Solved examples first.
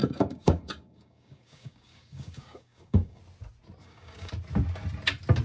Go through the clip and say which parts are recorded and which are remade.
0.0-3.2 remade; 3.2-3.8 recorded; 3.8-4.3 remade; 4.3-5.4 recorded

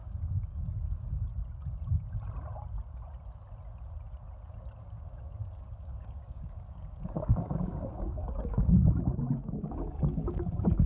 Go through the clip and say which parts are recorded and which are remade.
0.0-1.3 remade; 1.3-4.8 recorded; 4.8-10.9 remade

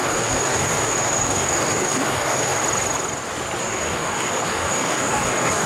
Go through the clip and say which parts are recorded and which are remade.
0.0-2.6 remade; 2.6-3.6 recorded; 3.6-5.7 remade

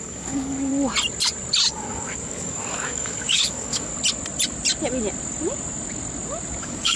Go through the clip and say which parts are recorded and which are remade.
0.0-0.7 remade; 0.7-1.7 recorded; 1.7-3.9 remade; 3.9-6.6 recorded; 6.6-7.0 remade

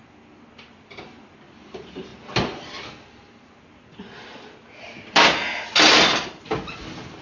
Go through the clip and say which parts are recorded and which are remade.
0.0-7.2 recorded